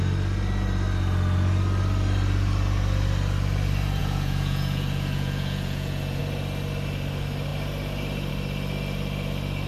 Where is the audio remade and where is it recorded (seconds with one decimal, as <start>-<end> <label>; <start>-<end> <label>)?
0.0-4.0 recorded; 4.0-6.2 remade; 6.2-9.7 recorded